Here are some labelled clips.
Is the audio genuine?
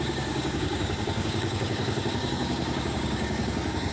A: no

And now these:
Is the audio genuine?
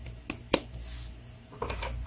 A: yes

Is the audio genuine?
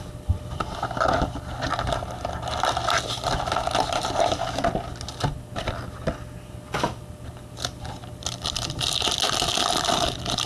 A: yes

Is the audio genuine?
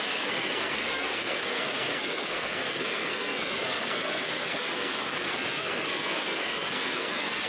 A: no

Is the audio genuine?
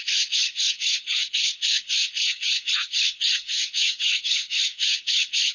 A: no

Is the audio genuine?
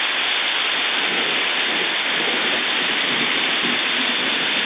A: yes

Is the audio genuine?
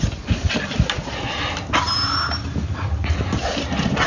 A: yes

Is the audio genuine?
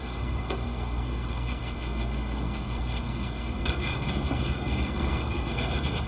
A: no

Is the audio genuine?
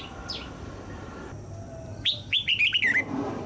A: yes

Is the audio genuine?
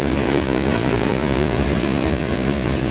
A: no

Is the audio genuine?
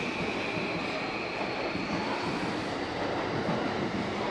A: yes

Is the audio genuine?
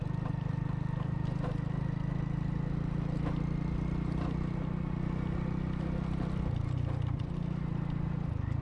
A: yes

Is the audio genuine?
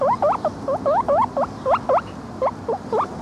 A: yes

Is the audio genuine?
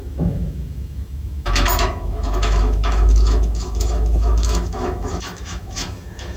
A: no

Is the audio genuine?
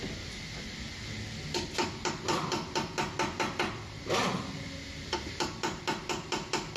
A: no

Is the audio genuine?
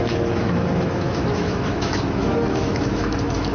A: no